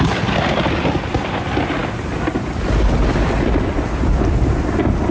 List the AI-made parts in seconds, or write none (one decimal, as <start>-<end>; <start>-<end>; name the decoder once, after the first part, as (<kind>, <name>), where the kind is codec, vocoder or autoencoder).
none